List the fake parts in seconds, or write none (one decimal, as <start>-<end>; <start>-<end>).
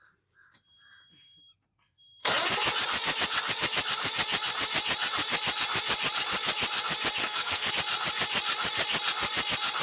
7.2-7.7